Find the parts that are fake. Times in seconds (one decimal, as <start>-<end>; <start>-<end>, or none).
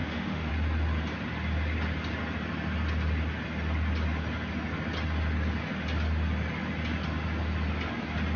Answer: 0.0-0.5